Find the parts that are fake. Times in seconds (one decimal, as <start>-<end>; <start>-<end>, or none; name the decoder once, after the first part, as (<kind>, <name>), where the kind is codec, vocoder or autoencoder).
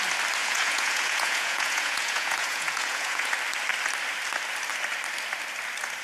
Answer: 0.4-3.3 (vocoder, Vocos)